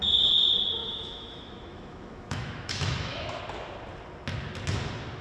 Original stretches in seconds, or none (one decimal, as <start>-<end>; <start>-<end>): 0.0-0.8; 3.4-5.2